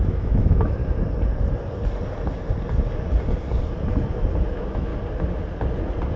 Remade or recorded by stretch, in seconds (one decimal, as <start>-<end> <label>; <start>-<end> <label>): 0.0-0.8 remade; 0.8-4.5 recorded; 4.5-4.9 remade; 4.9-6.2 recorded